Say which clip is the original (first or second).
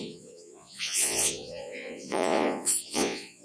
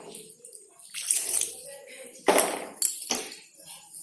second